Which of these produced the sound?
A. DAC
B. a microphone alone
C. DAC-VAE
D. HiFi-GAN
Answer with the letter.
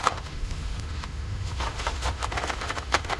C